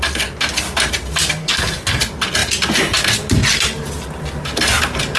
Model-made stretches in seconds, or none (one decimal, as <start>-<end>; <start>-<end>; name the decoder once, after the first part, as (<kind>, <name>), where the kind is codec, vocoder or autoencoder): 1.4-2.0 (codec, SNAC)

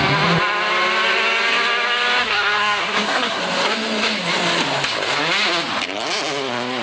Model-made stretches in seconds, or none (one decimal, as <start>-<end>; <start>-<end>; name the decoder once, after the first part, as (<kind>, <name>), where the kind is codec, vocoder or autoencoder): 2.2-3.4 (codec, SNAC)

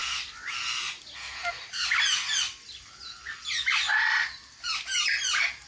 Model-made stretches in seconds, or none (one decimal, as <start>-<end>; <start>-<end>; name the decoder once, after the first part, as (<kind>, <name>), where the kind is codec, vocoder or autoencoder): none

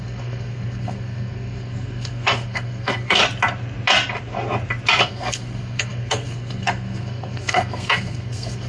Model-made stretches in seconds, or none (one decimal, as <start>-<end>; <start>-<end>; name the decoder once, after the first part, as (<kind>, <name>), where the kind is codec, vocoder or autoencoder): 0.0-3.2 (codec, SNAC); 5.0-8.7

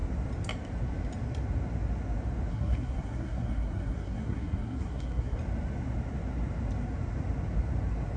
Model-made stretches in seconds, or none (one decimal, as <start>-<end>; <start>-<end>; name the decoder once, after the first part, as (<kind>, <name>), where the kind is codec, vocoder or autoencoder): 2.5-5.4 (codec, SNAC)

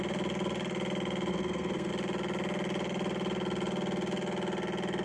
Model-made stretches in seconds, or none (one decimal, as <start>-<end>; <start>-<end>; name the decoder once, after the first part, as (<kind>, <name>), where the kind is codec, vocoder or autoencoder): 1.3-1.9 (codec, SNAC)